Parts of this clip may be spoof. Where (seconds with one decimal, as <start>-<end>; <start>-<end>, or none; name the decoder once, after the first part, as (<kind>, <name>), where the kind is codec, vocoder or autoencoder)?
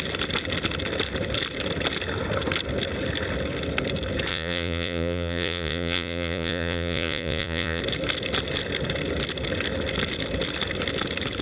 4.3-7.8 (vocoder, Vocos)